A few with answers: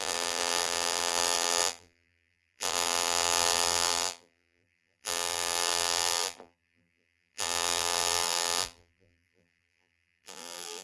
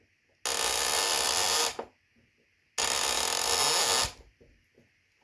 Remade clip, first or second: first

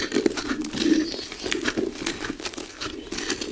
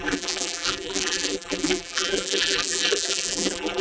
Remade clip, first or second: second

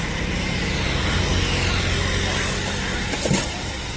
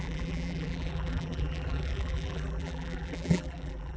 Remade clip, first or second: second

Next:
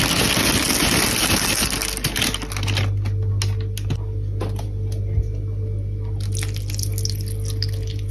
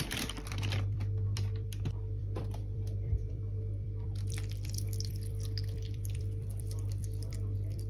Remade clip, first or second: second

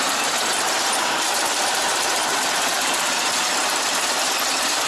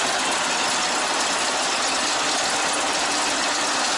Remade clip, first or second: first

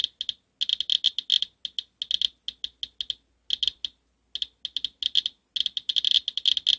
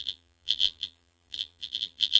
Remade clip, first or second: second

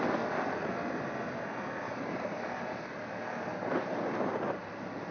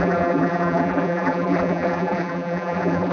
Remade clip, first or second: second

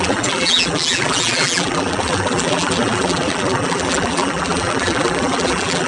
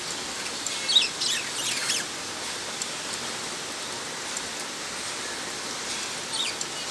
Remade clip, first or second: first